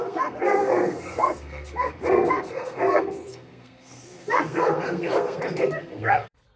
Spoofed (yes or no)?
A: yes